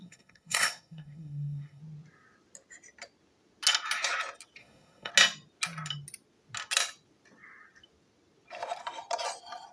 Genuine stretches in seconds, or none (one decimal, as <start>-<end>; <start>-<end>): 1.8-4.6; 5.1-9.7